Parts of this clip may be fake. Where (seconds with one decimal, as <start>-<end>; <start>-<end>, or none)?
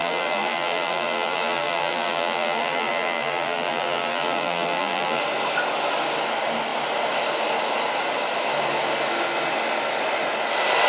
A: 0.0-5.2